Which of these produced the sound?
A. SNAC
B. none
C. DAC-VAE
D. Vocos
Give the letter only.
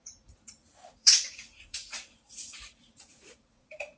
D